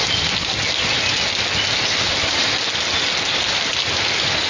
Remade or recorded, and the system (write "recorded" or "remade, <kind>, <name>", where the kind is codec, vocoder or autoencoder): recorded